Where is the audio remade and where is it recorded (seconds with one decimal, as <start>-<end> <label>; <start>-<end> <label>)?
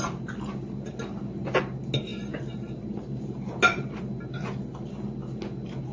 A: 0.0-5.9 recorded